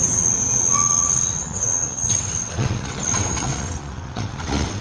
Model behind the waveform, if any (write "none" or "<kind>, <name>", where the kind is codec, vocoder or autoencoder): vocoder, WaveNeXt